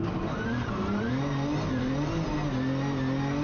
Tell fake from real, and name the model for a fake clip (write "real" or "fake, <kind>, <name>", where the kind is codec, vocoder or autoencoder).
real